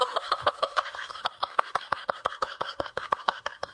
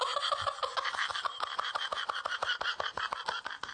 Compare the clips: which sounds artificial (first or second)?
first